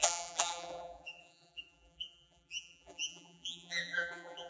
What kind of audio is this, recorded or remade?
remade